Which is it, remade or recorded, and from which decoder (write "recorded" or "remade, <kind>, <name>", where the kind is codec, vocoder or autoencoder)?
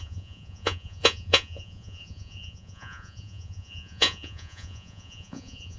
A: remade, vocoder, Vocos